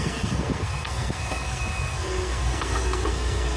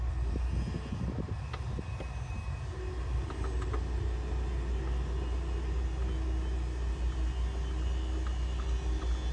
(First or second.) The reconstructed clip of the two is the first